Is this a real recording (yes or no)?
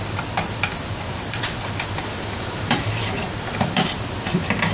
no